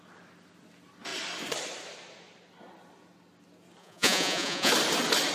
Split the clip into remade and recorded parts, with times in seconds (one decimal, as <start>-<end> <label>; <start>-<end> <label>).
0.0-3.8 recorded; 3.8-4.7 remade; 4.7-5.3 recorded